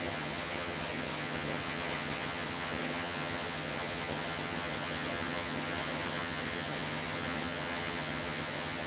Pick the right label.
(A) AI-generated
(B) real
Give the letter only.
A